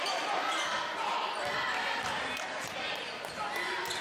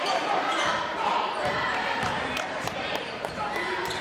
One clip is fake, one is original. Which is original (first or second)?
first